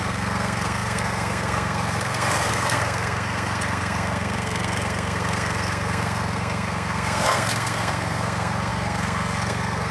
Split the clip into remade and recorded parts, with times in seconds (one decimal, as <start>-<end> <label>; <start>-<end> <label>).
0.0-9.9 remade